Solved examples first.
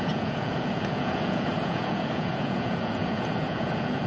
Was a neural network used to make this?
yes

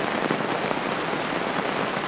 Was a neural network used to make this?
no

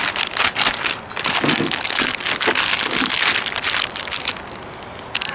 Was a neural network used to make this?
no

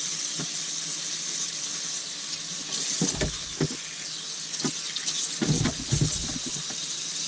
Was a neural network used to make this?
no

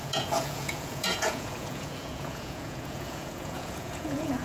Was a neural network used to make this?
yes